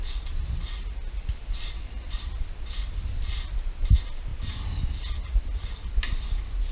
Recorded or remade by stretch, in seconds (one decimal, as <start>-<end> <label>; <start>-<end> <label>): 0.0-6.7 recorded